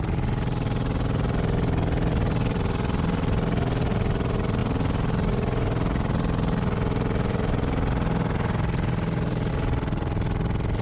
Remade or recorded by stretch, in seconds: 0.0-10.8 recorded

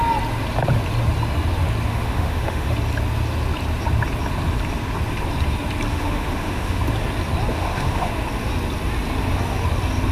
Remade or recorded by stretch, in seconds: 0.0-1.9 recorded; 1.9-2.7 remade; 2.7-5.9 recorded; 5.9-6.8 remade; 6.8-7.5 recorded; 7.5-8.1 remade; 8.1-10.1 recorded

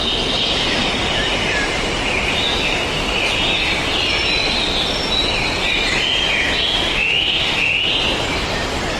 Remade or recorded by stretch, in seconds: 0.0-6.9 recorded; 6.9-7.9 remade; 7.9-9.0 recorded

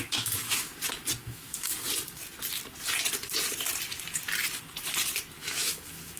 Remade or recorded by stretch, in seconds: 0.0-0.7 remade; 0.7-1.2 recorded; 1.2-1.7 remade; 1.7-5.4 recorded; 5.4-6.2 remade

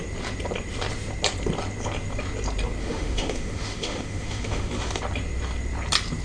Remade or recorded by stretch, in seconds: 0.0-2.8 recorded; 2.8-5.0 remade; 5.0-6.2 recorded